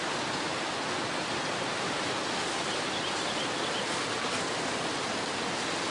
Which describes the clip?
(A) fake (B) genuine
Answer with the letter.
B